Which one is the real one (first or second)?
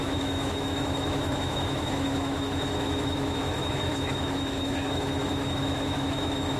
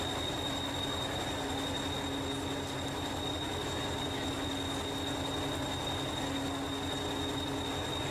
second